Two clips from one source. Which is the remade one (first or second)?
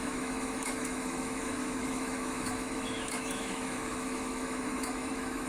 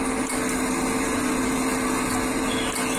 first